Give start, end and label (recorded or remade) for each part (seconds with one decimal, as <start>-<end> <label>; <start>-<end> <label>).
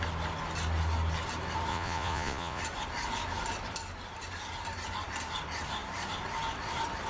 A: 0.0-1.7 recorded; 1.7-2.6 remade; 2.6-7.1 recorded